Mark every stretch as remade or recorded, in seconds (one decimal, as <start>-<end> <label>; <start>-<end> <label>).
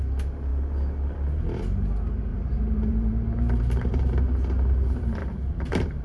0.0-2.3 recorded; 2.3-4.2 remade; 4.2-5.2 recorded; 5.2-6.0 remade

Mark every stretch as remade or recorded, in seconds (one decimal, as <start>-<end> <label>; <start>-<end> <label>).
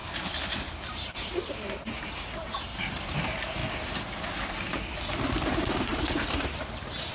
0.0-1.5 remade; 1.5-2.7 recorded; 2.7-3.2 remade; 3.2-7.1 recorded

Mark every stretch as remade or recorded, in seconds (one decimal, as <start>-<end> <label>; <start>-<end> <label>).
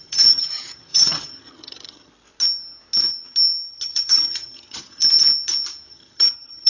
0.0-2.1 remade; 2.1-3.7 recorded; 3.7-5.0 remade; 5.0-5.9 recorded; 5.9-6.7 remade